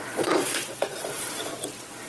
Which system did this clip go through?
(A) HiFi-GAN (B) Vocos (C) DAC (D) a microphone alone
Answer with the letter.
B